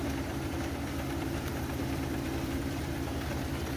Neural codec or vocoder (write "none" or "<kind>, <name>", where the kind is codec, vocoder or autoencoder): vocoder, BigVGAN v2